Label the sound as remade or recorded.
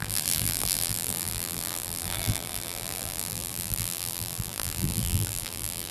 remade